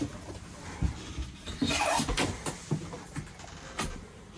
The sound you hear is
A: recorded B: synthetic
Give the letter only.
A